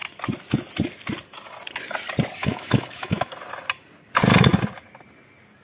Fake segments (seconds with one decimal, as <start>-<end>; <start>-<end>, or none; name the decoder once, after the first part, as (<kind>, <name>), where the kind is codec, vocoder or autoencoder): 2.4-3.3 (autoencoder, DAC-VAE)